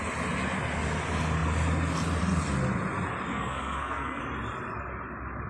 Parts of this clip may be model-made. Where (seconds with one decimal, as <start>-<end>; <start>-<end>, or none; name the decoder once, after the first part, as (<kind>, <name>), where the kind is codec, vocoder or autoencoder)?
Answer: 3.3-4.2 (codec, SNAC)

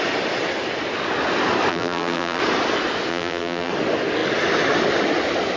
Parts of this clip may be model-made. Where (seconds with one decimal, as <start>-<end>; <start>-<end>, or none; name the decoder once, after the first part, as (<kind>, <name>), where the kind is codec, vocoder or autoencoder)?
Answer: 1.7-2.4 (vocoder, BigVGAN v2); 3.1-3.7

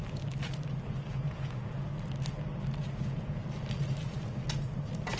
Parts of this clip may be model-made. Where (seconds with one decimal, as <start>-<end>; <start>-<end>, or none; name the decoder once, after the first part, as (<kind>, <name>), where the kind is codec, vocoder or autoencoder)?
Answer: 1.1-1.9 (vocoder, Vocos); 2.8-3.4